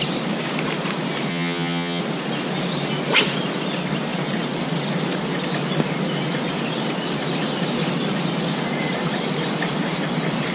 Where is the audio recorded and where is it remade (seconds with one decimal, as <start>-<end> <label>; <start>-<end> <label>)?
0.0-1.3 recorded; 1.3-2.0 remade; 2.0-10.5 recorded